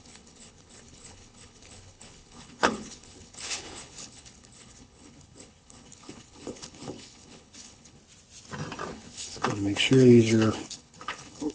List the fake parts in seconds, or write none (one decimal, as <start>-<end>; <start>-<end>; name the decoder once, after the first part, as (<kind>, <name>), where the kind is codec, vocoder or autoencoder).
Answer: 0.0-8.0 (codec, HILCodec); 8.9-11.5